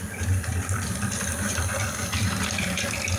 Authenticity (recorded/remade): recorded